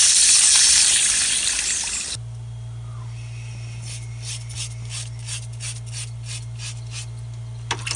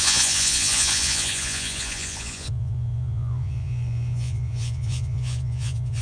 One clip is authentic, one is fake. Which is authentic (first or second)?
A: first